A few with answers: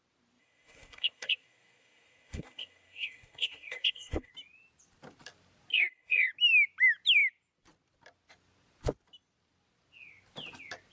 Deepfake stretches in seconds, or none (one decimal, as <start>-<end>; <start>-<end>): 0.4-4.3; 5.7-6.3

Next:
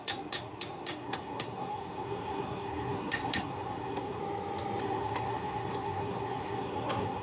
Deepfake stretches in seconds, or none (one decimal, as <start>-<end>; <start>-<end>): 0.0-4.2; 4.8-7.2

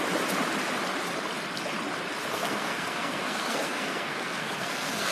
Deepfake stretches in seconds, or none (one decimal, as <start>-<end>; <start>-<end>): 2.3-5.1

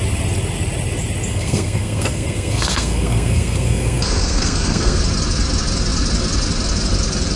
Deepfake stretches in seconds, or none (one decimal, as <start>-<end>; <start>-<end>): 1.3-5.0